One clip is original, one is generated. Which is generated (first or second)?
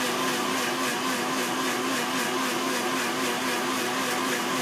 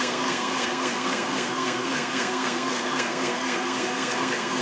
second